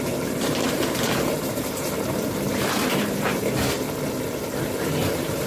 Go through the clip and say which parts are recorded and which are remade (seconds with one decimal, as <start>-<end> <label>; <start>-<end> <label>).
0.0-3.6 remade; 3.6-5.0 recorded; 5.0-5.5 remade